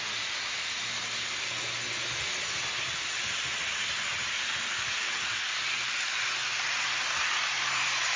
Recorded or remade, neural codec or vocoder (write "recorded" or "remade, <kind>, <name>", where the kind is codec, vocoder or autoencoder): recorded